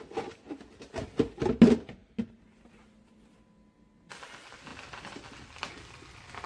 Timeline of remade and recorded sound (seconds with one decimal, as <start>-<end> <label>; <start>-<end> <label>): 0.0-6.5 recorded